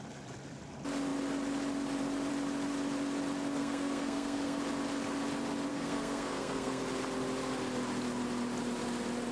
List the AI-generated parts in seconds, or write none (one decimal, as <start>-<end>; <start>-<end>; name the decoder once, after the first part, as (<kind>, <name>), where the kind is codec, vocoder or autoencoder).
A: 3.6-4.6 (codec, SNAC); 5.7-6.8